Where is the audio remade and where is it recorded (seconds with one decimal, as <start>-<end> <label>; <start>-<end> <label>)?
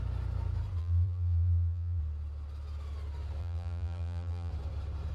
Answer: 0.0-0.8 recorded; 0.8-2.0 remade; 2.0-3.4 recorded; 3.4-4.5 remade; 4.5-5.1 recorded